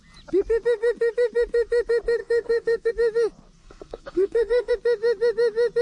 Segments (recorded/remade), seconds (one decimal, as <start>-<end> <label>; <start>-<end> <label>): 0.0-2.2 recorded; 2.2-2.9 remade; 2.9-3.6 recorded; 3.6-4.7 remade; 4.7-5.8 recorded